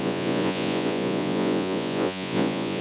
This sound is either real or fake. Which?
fake